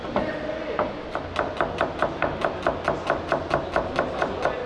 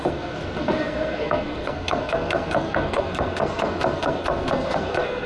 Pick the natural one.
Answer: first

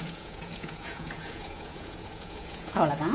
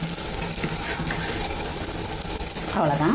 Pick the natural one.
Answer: second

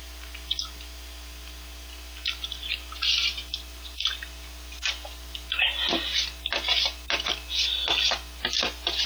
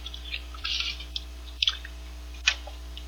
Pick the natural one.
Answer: first